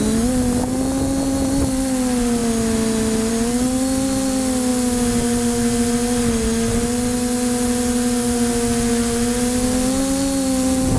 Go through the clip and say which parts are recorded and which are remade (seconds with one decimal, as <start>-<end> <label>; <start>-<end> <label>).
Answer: 0.0-11.0 recorded